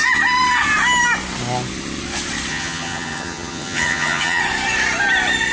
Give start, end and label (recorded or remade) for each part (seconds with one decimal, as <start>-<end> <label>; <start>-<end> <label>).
0.0-2.5 recorded; 2.5-4.4 remade; 4.4-5.5 recorded